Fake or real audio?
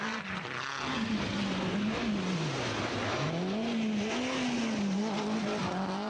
real